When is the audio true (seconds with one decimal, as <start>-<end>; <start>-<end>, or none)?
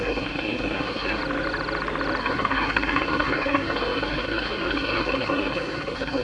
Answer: 1.2-2.2